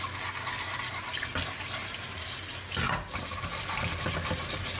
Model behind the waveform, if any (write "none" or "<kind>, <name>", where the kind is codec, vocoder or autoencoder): none